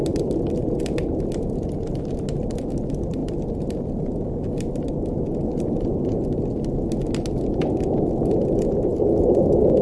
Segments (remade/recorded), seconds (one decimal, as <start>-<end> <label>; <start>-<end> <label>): 0.0-9.8 recorded